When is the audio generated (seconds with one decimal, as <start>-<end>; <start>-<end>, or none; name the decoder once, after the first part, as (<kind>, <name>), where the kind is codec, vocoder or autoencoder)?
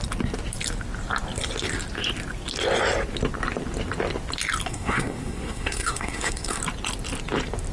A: 4.7-6.6 (codec, SNAC)